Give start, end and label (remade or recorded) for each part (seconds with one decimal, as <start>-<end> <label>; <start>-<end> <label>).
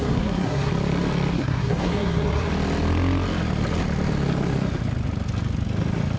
0.0-0.7 remade; 0.7-1.3 recorded; 1.3-2.5 remade; 2.5-6.2 recorded